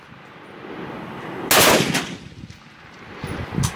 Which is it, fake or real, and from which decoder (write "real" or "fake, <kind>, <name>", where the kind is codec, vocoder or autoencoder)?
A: real